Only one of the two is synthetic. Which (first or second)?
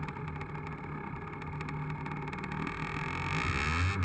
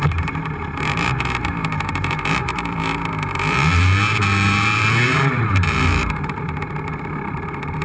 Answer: second